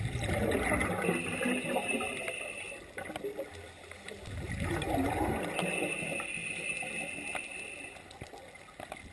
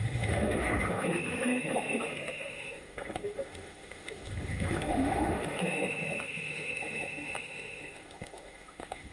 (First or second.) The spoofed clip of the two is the second